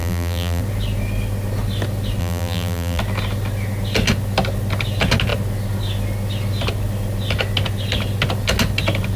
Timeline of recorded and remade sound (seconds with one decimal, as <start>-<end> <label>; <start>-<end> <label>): 0.0-0.6 remade; 0.6-2.2 recorded; 2.2-3.0 remade; 3.0-9.2 recorded